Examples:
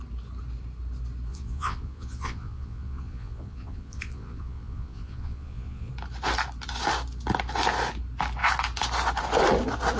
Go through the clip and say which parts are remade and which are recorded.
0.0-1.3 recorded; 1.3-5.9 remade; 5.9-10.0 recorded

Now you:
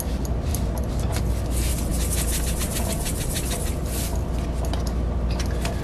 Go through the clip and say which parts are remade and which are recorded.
0.0-0.5 recorded; 0.5-1.2 remade; 1.2-5.8 recorded

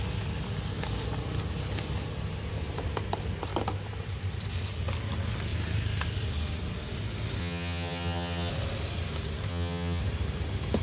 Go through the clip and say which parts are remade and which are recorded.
0.0-7.4 recorded; 7.4-8.5 remade; 8.5-9.5 recorded; 9.5-10.0 remade; 10.0-10.8 recorded